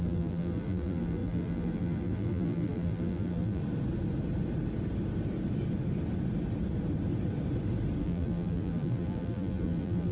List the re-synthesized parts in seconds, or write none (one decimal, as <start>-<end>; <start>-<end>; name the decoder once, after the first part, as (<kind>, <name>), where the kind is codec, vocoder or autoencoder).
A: 0.0-3.6 (vocoder, BigVGAN v2); 8.0-10.1